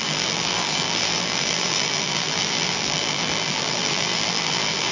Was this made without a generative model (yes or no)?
no